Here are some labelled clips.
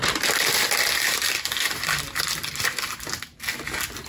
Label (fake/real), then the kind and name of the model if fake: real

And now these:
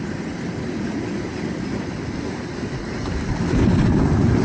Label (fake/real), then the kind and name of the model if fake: real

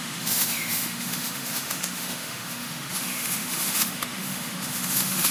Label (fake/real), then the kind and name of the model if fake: fake, autoencoder, DAC-VAE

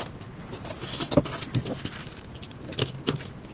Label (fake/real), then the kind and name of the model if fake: real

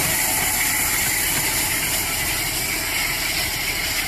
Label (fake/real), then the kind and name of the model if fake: real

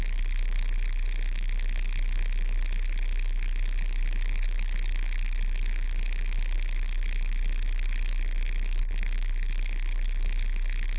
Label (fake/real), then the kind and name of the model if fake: fake, codec, HILCodec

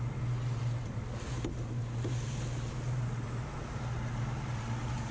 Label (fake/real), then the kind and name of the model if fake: real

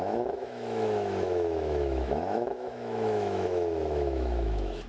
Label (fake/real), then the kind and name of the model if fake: fake, autoencoder, DAC-VAE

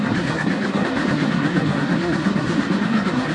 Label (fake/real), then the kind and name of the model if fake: fake, codec, SNAC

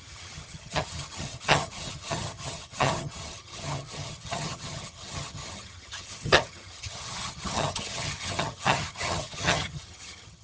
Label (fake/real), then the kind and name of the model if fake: fake, vocoder, HiFi-GAN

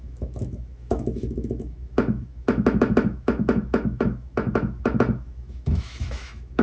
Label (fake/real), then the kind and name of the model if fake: fake, autoencoder, DAC-VAE